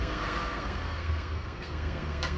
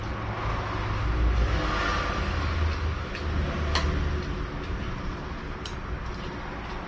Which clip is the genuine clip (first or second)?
second